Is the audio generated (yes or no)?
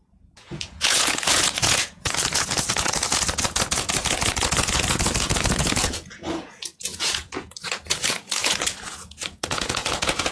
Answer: yes